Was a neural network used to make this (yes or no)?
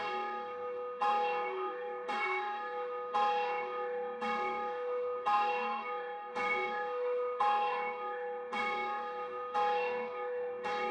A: yes